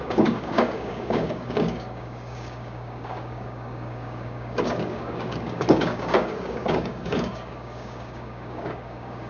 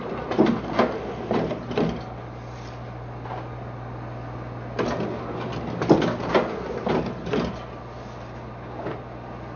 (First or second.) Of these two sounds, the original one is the second